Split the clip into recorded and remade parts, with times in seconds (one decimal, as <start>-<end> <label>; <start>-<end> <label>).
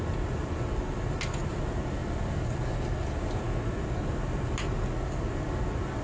0.0-6.0 recorded